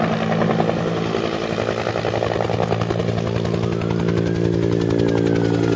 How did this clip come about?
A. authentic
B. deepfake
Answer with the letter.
A